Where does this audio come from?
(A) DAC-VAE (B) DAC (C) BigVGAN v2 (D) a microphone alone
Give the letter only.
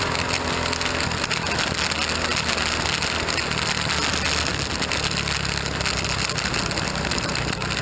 D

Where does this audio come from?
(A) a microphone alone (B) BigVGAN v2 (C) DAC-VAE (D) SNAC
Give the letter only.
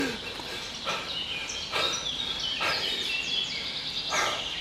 A